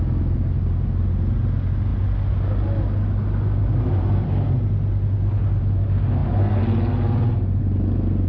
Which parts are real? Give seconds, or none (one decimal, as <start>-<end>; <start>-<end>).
0.0-8.3